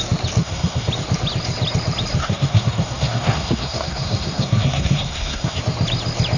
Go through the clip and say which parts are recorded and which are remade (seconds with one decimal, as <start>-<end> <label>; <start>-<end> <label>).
0.0-0.4 recorded; 0.4-0.9 remade; 0.9-2.2 recorded; 2.2-5.6 remade; 5.6-6.4 recorded